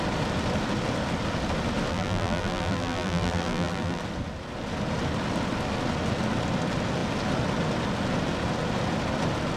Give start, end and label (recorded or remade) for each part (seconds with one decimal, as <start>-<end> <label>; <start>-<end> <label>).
0.0-1.9 recorded; 1.9-4.0 remade; 4.0-9.6 recorded